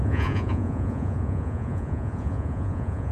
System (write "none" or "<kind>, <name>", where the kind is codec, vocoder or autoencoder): vocoder, Vocos